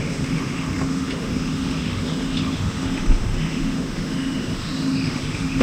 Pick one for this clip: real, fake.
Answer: fake